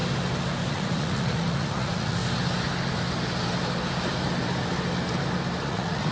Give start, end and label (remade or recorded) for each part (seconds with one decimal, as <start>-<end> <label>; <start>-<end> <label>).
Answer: 0.0-0.7 recorded; 0.7-2.2 remade; 2.2-5.6 recorded; 5.6-6.1 remade